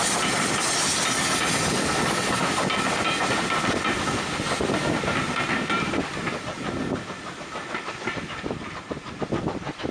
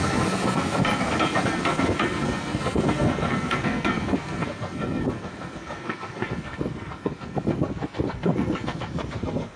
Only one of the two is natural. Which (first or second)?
first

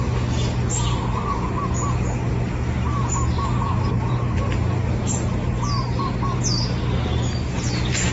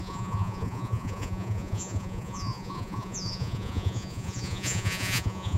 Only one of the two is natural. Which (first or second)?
first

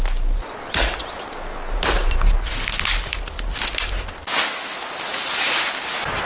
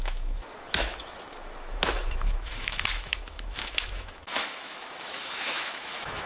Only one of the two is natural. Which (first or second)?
first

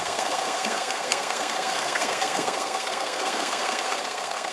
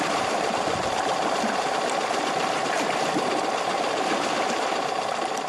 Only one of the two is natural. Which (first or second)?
second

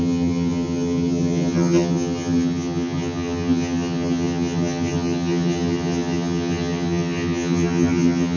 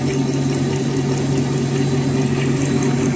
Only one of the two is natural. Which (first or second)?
second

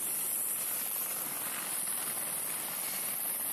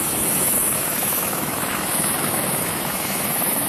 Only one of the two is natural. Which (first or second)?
first